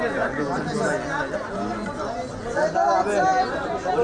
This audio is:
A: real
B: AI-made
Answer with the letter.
A